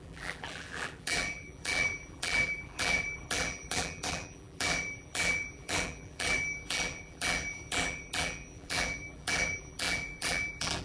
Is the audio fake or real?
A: fake